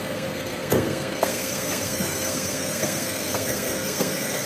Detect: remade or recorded remade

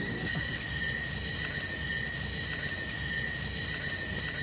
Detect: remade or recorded recorded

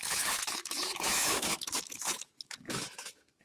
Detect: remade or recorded remade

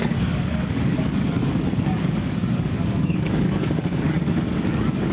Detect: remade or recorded remade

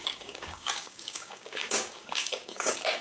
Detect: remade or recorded remade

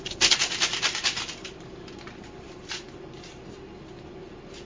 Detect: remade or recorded recorded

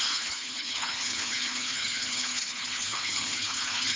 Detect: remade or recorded remade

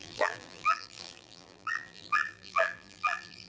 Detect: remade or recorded remade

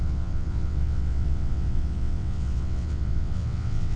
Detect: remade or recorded remade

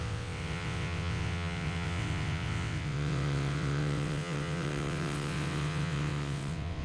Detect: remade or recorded remade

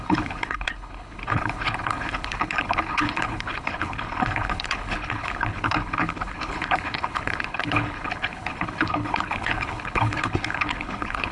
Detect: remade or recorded remade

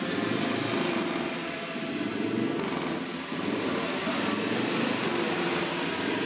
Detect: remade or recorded recorded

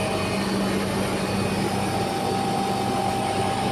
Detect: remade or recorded recorded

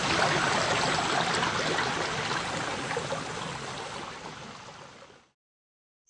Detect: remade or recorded recorded